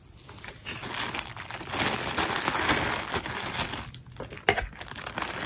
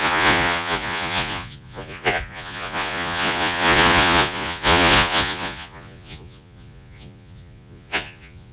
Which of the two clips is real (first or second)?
first